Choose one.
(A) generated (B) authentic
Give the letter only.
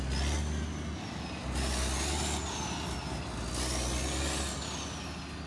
B